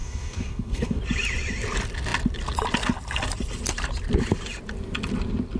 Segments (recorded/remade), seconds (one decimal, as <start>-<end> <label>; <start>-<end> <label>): 0.0-1.0 remade; 1.0-5.6 recorded